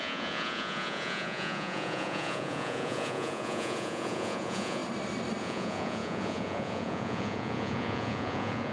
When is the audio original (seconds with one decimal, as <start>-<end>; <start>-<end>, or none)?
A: 4.8-5.4